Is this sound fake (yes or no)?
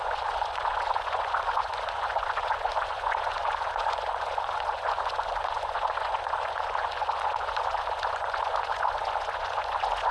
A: yes